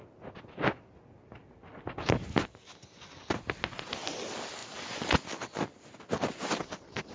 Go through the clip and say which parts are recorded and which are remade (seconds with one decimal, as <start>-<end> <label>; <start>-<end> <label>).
0.0-7.1 recorded